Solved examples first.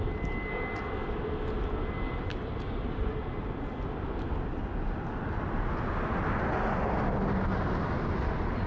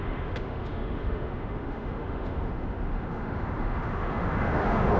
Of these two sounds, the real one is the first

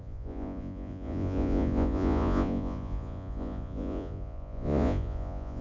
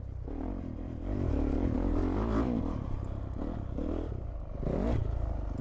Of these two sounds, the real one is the second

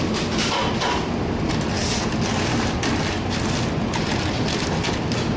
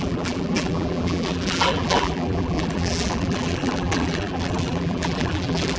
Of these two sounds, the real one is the first